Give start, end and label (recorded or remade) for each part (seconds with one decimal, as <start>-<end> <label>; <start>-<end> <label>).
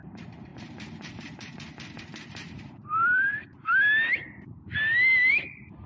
0.0-3.5 remade; 3.5-5.3 recorded; 5.3-5.9 remade